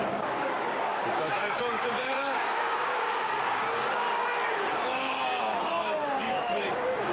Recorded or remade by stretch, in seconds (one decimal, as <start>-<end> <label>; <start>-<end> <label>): 0.0-7.1 remade